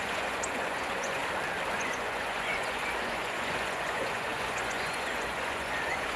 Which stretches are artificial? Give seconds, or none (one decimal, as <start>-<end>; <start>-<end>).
0.0-1.2; 1.7-6.2